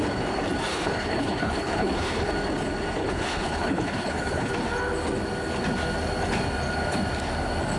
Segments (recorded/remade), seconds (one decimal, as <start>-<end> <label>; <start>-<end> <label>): 0.0-0.7 recorded; 0.7-2.3 remade; 2.3-3.0 recorded; 3.0-4.5 remade; 4.5-7.8 recorded